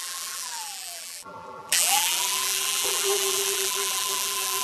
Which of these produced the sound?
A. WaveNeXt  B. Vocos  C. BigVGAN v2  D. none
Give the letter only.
C